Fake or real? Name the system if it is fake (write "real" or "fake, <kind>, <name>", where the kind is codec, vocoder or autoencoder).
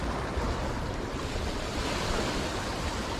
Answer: real